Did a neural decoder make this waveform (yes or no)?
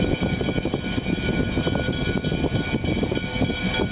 no